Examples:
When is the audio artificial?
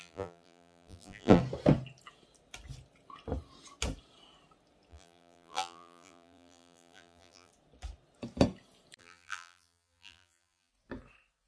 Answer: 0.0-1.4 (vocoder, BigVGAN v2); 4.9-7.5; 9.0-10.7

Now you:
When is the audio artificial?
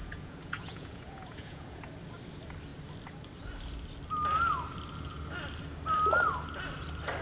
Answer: 0.0-1.8 (vocoder, Vocos)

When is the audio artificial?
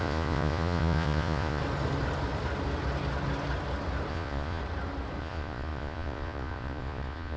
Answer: 0.0-1.6 (vocoder, Vocos); 4.1-4.6; 5.2-7.4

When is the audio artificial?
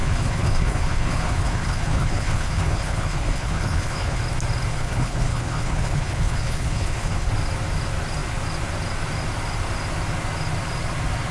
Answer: 0.0-4.2 (codec, HILCodec); 4.7-7.3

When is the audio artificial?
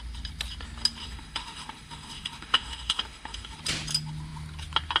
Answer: 1.0-3.6 (autoencoder, DAC-VAE)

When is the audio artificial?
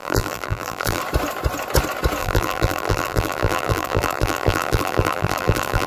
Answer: 0.0-1.0 (vocoder, BigVGAN v2); 2.2-5.9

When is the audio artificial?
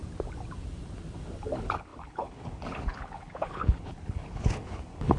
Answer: 1.5-5.2 (codec, HILCodec)